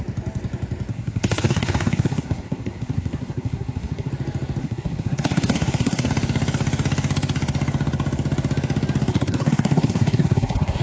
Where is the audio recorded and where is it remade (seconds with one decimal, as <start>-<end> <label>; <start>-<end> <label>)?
0.0-0.9 recorded; 0.9-4.1 remade; 4.1-4.6 recorded; 4.6-6.1 remade; 6.1-9.1 recorded; 9.1-10.8 remade